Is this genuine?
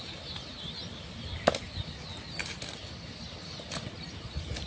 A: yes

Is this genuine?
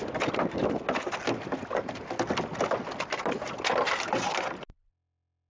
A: yes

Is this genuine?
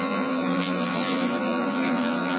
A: no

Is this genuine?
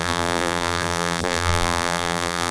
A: no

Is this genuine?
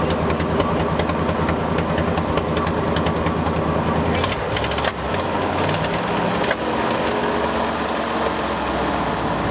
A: yes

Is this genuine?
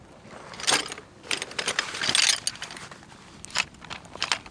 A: yes